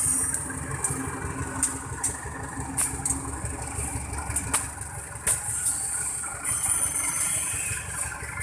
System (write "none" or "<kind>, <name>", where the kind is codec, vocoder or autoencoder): none